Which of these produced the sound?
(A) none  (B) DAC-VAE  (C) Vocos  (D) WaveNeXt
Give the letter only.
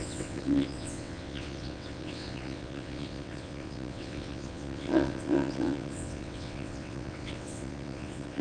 D